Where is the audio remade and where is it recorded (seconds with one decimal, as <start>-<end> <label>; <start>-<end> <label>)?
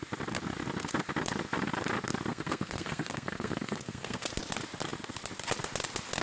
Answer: 0.0-2.3 recorded; 2.3-4.3 remade; 4.3-6.2 recorded